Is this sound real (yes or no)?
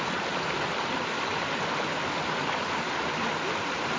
yes